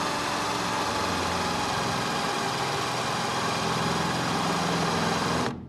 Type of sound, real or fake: real